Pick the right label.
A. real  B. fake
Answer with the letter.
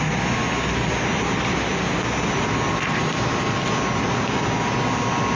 A